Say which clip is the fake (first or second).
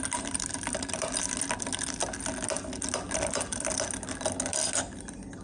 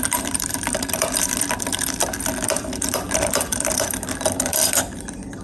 second